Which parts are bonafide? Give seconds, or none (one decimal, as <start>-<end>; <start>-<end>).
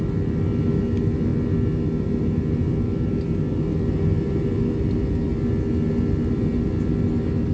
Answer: 0.0-7.5